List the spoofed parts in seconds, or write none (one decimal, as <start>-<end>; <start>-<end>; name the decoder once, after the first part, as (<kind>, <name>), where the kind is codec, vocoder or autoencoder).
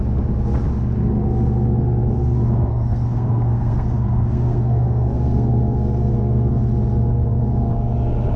2.7-6.5 (codec, SNAC)